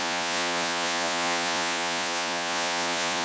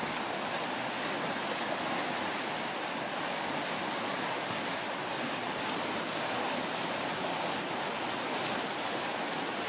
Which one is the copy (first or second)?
first